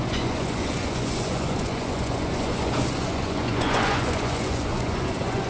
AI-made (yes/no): yes